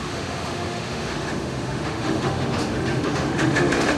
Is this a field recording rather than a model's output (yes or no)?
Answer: no